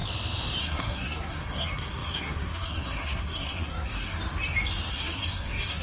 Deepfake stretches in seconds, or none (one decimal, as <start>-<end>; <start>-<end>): 0.6-4.2; 4.9-5.8